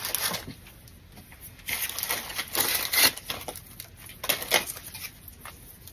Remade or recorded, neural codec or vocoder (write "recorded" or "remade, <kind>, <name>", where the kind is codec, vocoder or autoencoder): recorded